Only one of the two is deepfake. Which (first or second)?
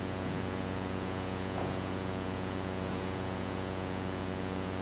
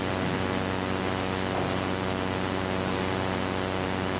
first